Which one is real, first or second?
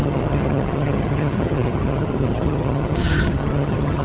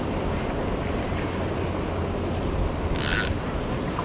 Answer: second